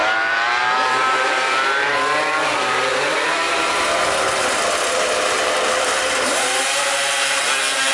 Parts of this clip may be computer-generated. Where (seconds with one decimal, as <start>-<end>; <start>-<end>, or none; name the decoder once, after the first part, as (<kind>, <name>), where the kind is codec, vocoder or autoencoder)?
0.0-1.9 (vocoder, BigVGAN v2); 2.4-7.1